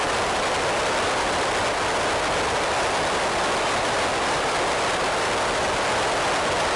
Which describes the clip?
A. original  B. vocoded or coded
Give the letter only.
A